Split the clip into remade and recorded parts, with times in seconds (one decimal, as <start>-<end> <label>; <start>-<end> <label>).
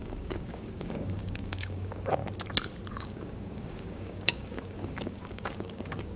0.0-2.2 remade; 2.2-2.9 recorded; 2.9-6.2 remade